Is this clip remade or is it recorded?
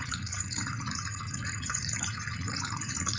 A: remade